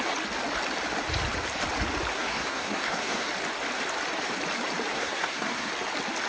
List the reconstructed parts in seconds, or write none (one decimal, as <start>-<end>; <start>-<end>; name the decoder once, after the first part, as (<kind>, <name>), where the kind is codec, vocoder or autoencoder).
2.1-3.3 (codec, SNAC); 4.9-5.7